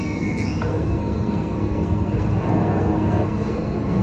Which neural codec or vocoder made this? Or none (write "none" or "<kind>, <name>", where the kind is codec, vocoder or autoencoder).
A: codec, SNAC